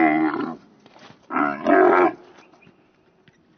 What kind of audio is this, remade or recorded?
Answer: recorded